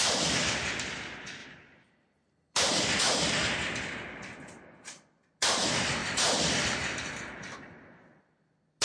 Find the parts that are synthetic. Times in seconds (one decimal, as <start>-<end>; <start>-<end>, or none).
1.4-3.2; 6.0-7.1